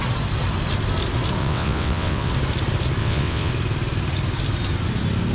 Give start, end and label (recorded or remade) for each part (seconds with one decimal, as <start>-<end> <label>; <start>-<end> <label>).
0.0-1.4 recorded; 1.4-2.3 remade; 2.3-3.0 recorded; 3.0-3.5 remade; 3.5-5.3 recorded